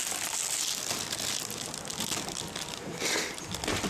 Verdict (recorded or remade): recorded